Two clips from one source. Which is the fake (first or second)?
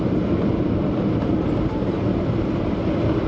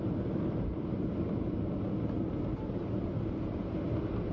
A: first